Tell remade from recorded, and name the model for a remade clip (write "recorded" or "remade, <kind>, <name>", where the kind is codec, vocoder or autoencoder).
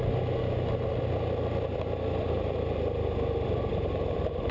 recorded